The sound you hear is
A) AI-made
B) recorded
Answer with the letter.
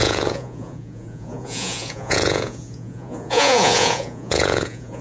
A